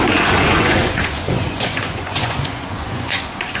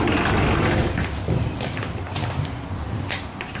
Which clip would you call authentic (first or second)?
second